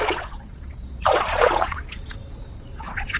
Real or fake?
fake